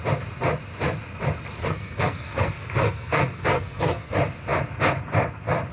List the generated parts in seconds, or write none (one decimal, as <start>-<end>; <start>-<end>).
1.6-4.1